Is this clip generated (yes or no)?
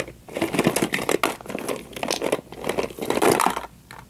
no